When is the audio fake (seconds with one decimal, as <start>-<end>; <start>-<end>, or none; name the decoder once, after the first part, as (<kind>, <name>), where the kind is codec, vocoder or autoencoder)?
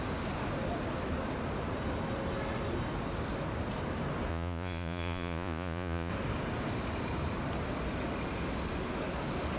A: 4.3-6.1 (vocoder, Vocos)